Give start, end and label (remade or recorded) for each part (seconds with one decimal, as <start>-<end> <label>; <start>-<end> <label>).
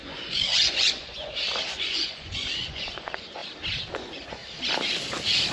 0.0-3.4 remade; 3.4-3.9 recorded; 3.9-4.4 remade; 4.4-5.5 recorded